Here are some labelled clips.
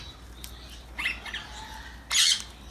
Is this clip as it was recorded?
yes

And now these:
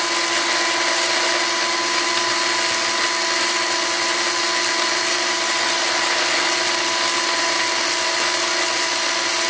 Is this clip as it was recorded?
yes